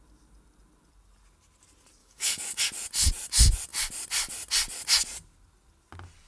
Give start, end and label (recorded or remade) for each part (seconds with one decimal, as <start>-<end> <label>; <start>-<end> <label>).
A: 0.0-2.0 recorded; 2.0-2.6 remade; 2.6-6.3 recorded